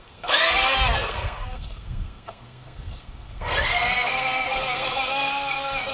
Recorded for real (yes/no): no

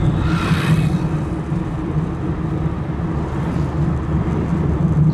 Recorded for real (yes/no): yes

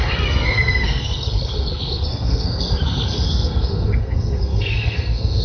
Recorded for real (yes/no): no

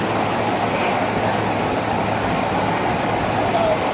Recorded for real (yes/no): yes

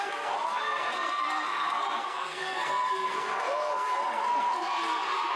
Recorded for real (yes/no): no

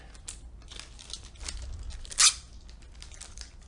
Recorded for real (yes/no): yes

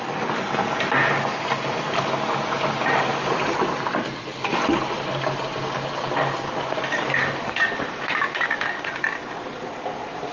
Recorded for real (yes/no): yes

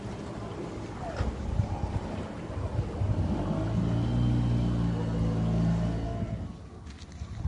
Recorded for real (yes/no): yes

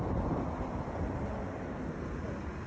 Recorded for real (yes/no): yes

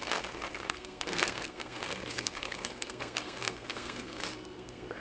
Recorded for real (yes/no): no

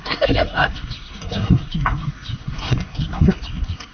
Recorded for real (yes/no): no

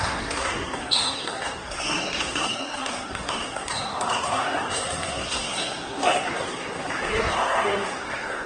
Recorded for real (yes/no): no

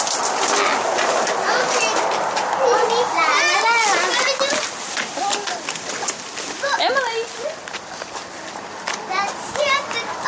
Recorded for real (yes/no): yes